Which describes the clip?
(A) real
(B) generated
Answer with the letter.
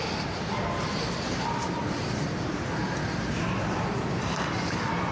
B